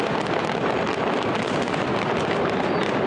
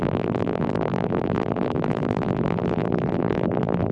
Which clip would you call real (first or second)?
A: first